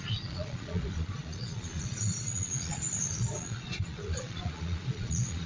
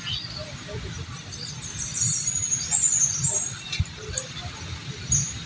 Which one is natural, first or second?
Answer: second